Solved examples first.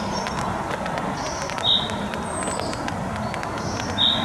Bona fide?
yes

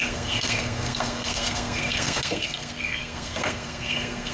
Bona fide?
no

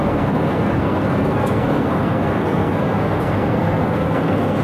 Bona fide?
no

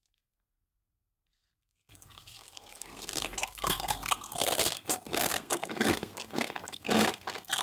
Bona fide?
no